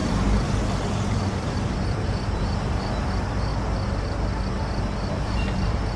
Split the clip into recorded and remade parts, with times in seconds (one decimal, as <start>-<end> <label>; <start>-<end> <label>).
0.0-3.5 remade; 3.5-5.2 recorded; 5.2-6.0 remade